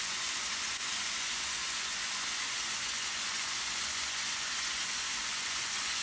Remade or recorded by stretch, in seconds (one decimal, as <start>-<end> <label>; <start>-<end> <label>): 0.0-6.0 remade